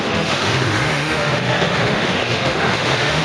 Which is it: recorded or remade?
remade